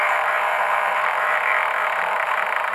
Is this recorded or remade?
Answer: remade